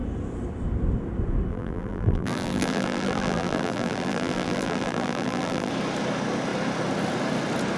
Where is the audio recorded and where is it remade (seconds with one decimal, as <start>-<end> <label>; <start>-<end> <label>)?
0.0-1.5 recorded; 1.5-5.7 remade; 5.7-7.8 recorded